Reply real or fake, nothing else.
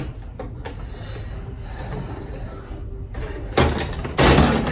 real